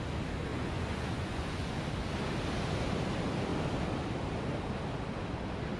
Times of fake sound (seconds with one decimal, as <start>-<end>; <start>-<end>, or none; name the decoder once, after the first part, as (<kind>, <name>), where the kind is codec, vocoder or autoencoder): 0.5-1.8 (vocoder, Vocos)